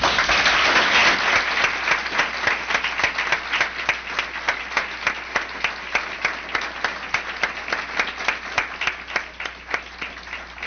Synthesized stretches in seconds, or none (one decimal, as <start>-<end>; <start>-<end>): none